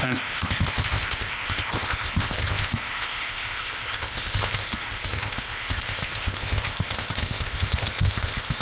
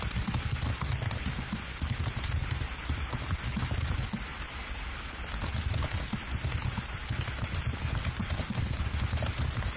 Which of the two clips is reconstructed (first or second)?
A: first